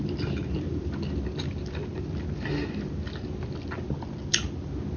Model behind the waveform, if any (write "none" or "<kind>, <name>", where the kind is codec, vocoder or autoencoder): none